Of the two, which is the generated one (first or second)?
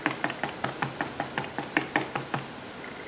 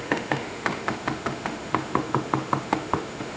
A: second